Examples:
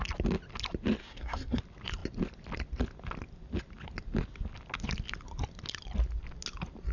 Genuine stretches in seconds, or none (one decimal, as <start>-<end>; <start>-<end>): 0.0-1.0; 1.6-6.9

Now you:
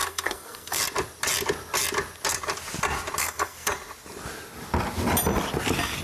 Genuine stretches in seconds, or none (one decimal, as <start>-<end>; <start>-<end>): 0.8-3.2; 3.7-6.0

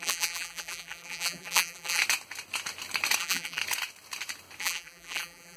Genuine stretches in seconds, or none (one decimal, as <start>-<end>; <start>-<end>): 2.0-3.2; 3.6-4.6

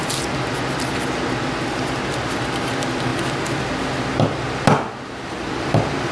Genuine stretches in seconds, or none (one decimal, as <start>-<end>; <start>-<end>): 0.0-2.3; 3.1-5.1

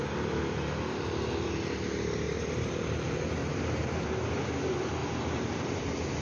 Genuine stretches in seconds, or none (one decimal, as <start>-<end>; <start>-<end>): 0.0-6.2